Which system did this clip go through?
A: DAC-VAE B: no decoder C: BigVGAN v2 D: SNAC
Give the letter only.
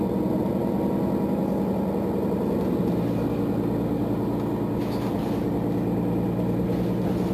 B